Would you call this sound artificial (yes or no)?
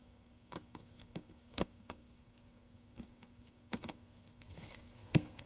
yes